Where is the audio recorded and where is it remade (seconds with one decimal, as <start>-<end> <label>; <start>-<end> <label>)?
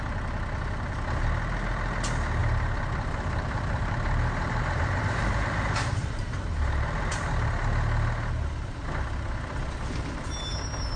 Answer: 0.0-2.4 recorded; 2.4-7.1 remade; 7.1-11.0 recorded